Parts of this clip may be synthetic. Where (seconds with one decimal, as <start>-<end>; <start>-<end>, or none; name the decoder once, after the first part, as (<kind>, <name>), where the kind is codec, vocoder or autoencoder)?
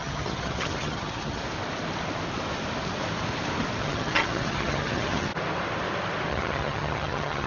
0.0-1.4 (vocoder, HiFi-GAN); 3.8-5.3; 6.3-7.5